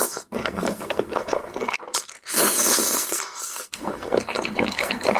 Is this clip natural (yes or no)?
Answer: no